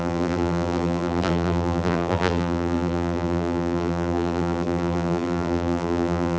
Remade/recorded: remade